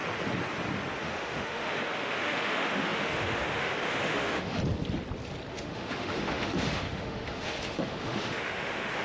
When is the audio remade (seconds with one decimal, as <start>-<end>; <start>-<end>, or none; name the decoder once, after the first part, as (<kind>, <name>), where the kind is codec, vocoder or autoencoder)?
1.0-4.6 (autoencoder, DAC-VAE); 5.5-9.0